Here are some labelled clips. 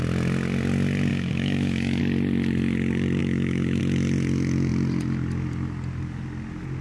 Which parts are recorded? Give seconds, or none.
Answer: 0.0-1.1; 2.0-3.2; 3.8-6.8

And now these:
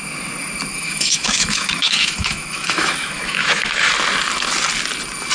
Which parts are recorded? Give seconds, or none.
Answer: 0.0-0.7; 3.9-5.3

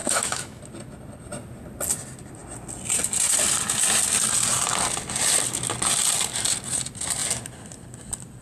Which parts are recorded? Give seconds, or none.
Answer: 0.6-8.4

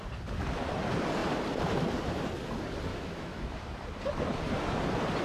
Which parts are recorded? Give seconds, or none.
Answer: 0.0-2.9; 3.7-5.2

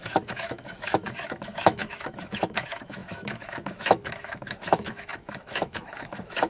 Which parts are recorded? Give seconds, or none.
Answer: none